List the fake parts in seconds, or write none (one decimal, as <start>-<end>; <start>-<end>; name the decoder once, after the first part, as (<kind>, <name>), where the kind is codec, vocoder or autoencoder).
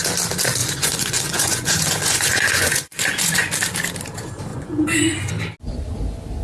0.6-3.5 (vocoder, Vocos); 4.5-5.3